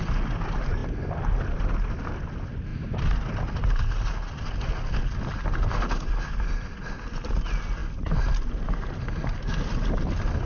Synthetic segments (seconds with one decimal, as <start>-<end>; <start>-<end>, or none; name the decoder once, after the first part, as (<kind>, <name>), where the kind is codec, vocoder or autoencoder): none